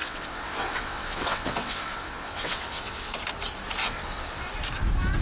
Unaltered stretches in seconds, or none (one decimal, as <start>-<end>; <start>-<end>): 3.1-3.8; 4.5-5.2